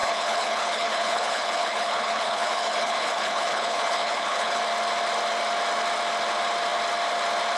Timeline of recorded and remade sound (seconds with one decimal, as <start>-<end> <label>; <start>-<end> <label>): 0.0-4.6 remade; 4.6-7.6 recorded